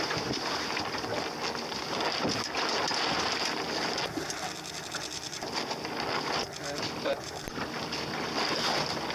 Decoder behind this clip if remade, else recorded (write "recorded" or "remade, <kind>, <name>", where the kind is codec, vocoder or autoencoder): recorded